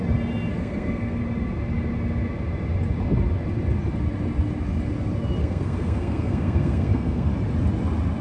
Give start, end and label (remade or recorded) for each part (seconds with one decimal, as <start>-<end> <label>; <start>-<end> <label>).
0.0-0.5 recorded; 0.5-1.2 remade; 1.2-5.4 recorded; 5.4-7.3 remade; 7.3-8.2 recorded